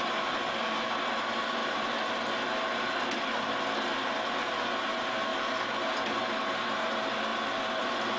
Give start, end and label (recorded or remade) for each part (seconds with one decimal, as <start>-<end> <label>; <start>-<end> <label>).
0.0-1.6 recorded; 1.6-3.6 remade; 3.6-7.3 recorded; 7.3-8.2 remade